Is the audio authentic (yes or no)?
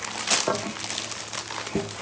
yes